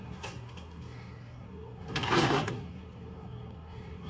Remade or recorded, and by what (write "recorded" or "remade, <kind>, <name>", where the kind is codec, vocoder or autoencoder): remade, codec, SNAC